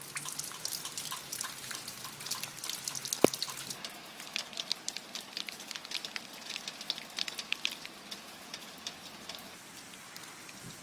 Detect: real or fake real